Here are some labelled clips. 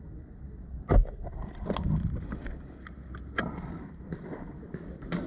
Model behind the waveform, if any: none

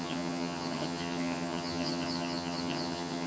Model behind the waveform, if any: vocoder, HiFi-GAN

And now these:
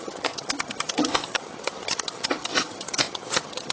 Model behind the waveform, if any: vocoder, HiFi-GAN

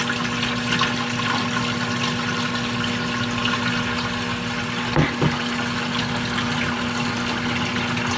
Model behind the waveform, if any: none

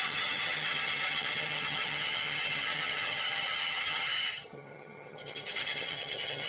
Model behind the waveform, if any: vocoder, HiFi-GAN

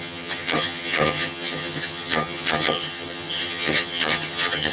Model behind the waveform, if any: vocoder, HiFi-GAN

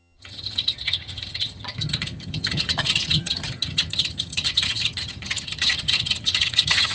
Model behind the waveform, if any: vocoder, HiFi-GAN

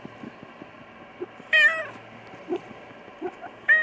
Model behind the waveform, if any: none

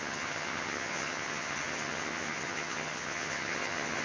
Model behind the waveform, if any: vocoder, HiFi-GAN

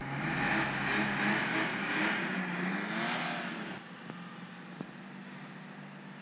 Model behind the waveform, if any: none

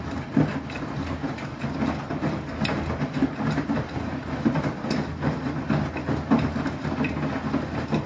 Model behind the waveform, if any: none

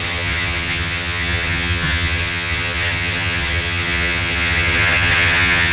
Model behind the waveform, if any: vocoder, HiFi-GAN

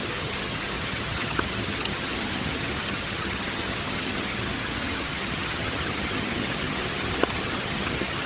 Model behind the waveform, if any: vocoder, HiFi-GAN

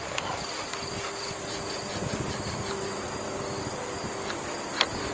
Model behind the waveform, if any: none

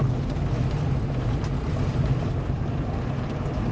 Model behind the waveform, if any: none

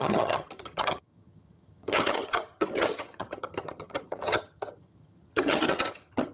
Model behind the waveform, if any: vocoder, HiFi-GAN